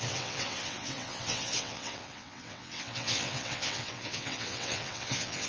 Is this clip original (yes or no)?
no